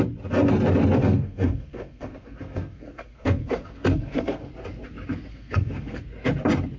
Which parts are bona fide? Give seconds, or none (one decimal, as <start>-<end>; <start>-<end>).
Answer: 0.0-1.0; 4.5-5.3; 6.0-6.8